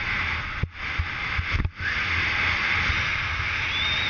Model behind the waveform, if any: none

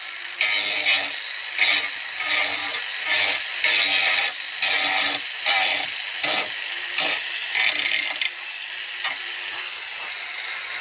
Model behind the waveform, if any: none